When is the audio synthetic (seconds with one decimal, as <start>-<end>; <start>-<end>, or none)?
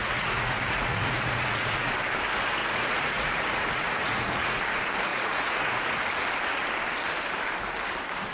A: 0.0-1.9; 2.6-4.6; 5.1-6.1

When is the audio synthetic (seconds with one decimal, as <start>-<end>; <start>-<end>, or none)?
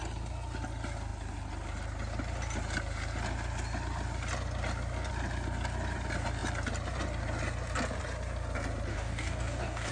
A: 8.9-9.9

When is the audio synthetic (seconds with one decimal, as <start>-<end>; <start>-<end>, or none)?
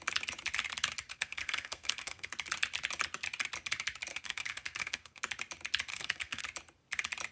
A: 1.1-2.3; 4.1-5.2; 5.9-6.4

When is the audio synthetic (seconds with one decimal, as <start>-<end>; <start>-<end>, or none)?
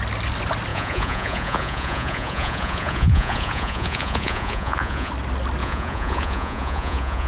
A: 0.7-5.1; 5.6-7.3